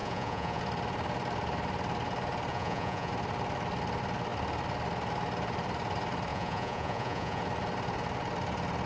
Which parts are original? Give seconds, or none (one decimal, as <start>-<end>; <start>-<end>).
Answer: 0.6-2.5; 3.1-6.3; 7.4-8.9